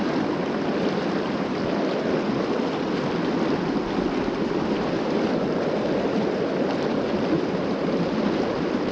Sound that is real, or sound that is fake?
real